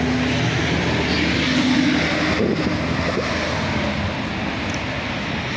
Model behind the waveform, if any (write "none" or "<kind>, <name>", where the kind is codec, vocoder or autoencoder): none